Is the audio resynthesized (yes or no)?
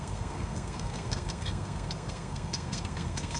yes